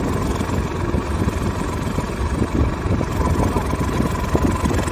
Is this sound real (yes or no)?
yes